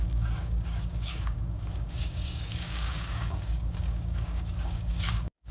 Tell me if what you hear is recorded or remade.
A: remade